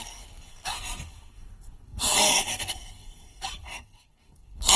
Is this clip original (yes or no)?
no